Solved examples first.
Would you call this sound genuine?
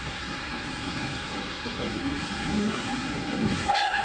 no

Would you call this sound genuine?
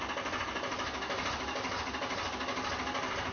yes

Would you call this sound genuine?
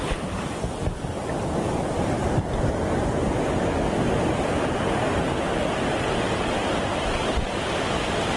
yes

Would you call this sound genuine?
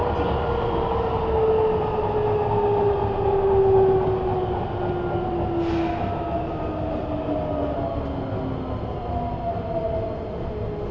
yes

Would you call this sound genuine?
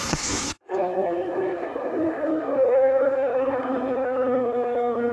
no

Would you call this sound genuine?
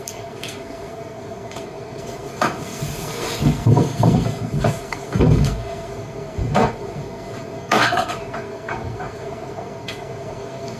no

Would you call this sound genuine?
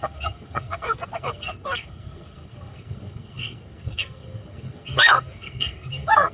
no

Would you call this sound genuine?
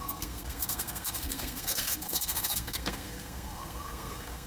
no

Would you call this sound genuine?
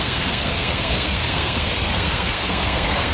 no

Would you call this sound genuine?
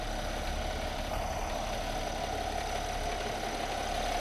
yes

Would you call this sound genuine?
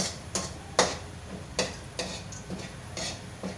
yes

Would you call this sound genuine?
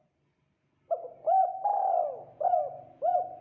yes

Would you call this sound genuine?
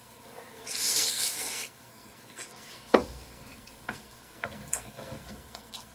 no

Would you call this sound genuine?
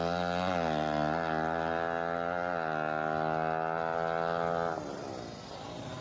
yes